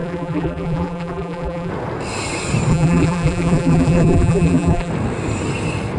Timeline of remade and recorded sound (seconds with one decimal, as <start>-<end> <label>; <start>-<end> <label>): 0.0-1.7 remade; 1.7-2.7 recorded; 2.7-4.9 remade; 4.9-6.0 recorded